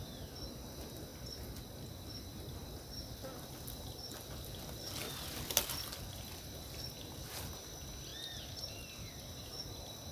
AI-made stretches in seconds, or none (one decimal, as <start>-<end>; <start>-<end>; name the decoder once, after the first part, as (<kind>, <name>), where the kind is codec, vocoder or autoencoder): none